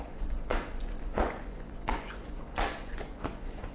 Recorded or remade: remade